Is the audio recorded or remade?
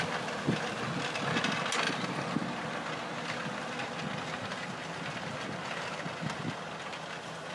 recorded